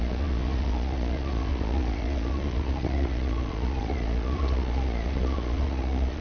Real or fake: fake